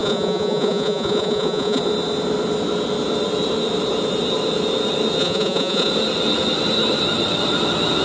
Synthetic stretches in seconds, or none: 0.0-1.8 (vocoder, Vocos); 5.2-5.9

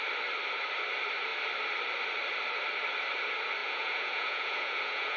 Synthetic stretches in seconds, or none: 3.6-5.2 (vocoder, Vocos)

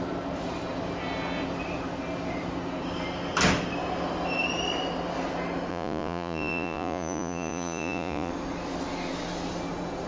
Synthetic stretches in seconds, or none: 5.7-8.3 (vocoder, Vocos)